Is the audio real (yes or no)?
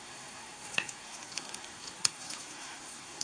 no